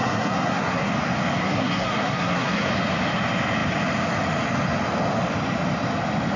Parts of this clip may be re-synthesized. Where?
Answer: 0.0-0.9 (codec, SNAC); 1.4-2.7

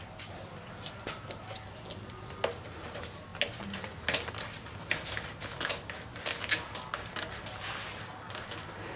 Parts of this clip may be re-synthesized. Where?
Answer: none

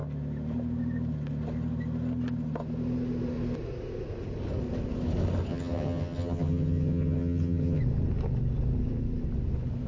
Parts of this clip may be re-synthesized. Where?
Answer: 5.5-7.8 (vocoder, HiFi-GAN)

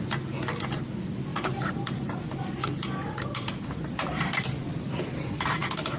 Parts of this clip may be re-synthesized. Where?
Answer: 1.3-2.3 (vocoder, BigVGAN v2)

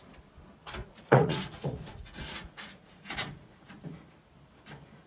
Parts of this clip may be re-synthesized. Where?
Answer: 0.8-3.9 (vocoder, Vocos)

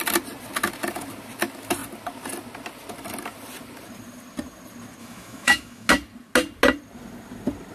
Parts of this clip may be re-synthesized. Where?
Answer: 5.0-5.9 (autoencoder, DAC-VAE)